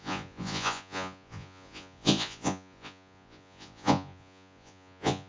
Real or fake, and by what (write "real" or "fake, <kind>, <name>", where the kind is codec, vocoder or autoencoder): fake, vocoder, Vocos